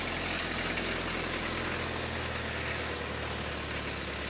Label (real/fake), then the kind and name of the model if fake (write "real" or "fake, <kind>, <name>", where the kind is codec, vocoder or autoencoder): real